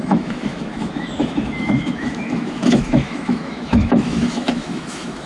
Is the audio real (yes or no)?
no